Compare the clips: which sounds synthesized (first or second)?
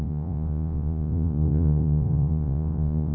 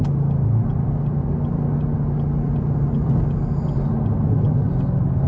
first